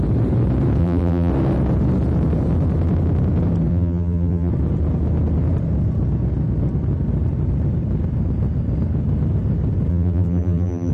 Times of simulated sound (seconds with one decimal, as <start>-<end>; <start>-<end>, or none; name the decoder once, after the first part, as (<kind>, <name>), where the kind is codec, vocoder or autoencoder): 0.8-1.3 (vocoder, BigVGAN v2); 3.7-4.5; 9.9-10.9